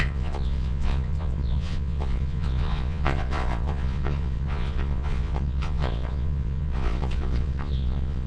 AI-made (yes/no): yes